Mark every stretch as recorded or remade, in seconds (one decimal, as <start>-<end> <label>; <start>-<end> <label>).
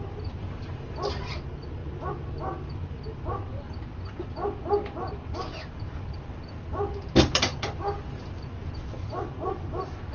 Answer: 0.0-10.1 recorded